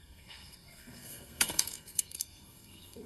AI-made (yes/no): yes